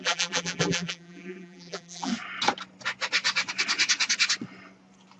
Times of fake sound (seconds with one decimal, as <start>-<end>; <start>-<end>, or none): 0.0-2.1